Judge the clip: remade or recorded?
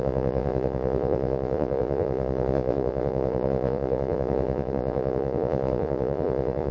remade